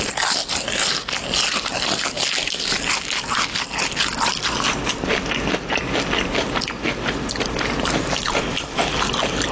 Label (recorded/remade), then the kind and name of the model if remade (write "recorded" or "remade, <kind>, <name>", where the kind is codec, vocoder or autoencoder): recorded